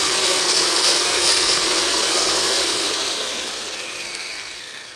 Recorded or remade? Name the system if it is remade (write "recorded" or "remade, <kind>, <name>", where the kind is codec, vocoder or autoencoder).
remade, codec, SNAC